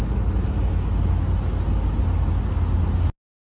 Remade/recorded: recorded